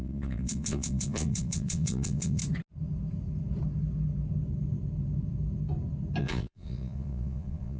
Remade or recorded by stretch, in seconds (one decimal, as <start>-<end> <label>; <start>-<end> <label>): 0.0-2.4 remade; 2.4-6.2 recorded; 6.2-7.8 remade